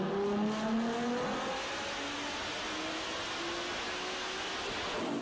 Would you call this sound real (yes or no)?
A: yes